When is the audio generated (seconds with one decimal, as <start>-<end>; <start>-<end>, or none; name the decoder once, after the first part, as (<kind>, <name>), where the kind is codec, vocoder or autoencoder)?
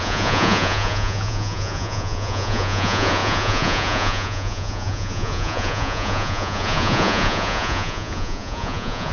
0.0-9.1 (vocoder, Vocos)